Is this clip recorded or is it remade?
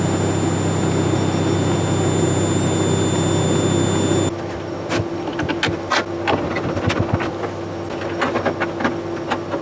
recorded